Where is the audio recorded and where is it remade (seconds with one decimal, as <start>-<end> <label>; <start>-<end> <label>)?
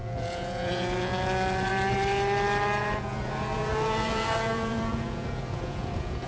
0.0-1.7 remade; 1.7-2.8 recorded; 2.8-6.3 remade